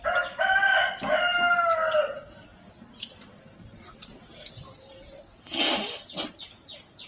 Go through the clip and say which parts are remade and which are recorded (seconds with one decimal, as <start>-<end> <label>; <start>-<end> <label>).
0.0-7.1 recorded

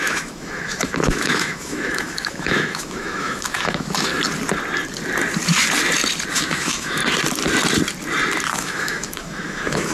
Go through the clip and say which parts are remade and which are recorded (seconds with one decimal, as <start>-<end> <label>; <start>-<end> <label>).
0.0-4.1 remade; 4.1-6.3 recorded; 6.3-7.0 remade; 7.0-8.5 recorded; 8.5-9.9 remade

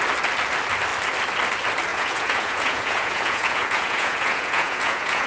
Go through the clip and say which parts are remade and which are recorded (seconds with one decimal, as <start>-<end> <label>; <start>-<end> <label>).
0.0-1.9 recorded; 1.9-5.3 remade

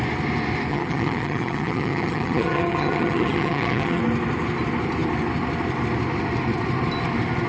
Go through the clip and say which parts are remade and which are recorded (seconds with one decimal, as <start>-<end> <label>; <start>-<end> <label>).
0.0-0.7 recorded; 0.7-4.0 remade; 4.0-7.5 recorded

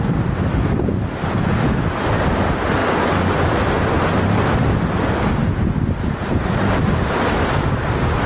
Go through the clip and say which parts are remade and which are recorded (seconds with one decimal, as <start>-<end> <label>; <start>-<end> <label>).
0.0-8.3 recorded

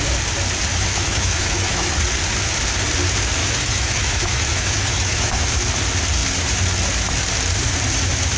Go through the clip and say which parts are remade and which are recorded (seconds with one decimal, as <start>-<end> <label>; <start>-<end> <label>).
0.0-0.7 recorded; 0.7-2.0 remade; 2.0-3.4 recorded; 3.4-5.4 remade; 5.4-8.4 recorded